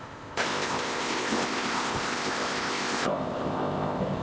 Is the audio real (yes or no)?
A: no